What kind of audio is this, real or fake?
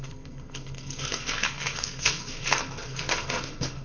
fake